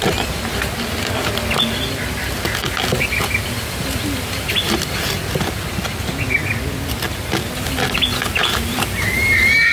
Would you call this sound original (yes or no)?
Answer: yes